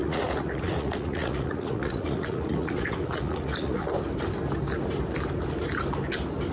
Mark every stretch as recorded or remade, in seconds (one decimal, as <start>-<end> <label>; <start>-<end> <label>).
0.0-3.9 remade; 3.9-6.5 recorded